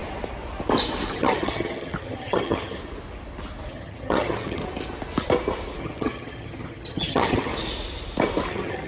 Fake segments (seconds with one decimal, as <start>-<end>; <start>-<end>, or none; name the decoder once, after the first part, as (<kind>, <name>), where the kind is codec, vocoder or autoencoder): 1.1-2.8 (vocoder, HiFi-GAN); 3.7-4.6; 5.8-7.5; 8.5-8.9